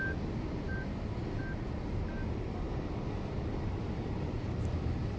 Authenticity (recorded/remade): remade